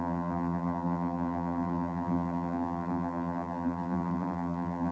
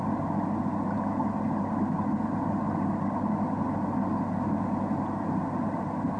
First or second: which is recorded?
second